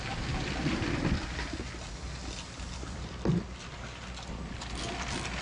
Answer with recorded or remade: recorded